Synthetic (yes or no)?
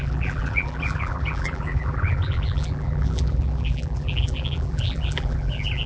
yes